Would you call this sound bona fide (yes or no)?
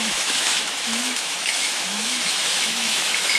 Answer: no